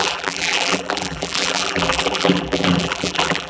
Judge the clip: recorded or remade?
remade